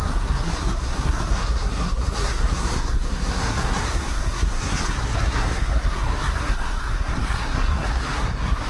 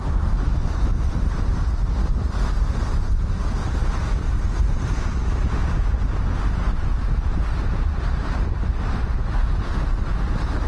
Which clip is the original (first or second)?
second